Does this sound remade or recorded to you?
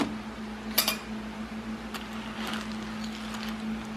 recorded